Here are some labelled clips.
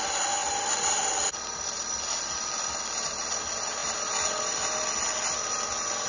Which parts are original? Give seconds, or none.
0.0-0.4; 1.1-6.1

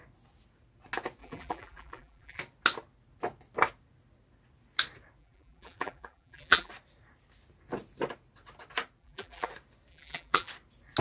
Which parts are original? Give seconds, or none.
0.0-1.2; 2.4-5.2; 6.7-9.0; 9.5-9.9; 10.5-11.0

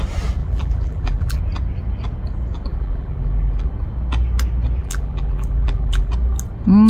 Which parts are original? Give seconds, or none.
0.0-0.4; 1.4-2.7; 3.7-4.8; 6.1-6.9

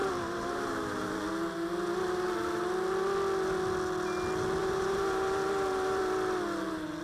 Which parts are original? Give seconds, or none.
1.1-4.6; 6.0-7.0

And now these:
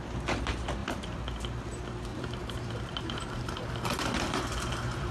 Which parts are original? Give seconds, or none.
0.0-2.1

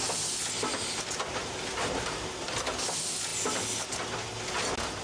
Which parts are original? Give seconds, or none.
0.0-1.4; 2.3-5.0